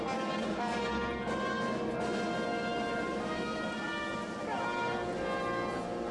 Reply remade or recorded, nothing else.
recorded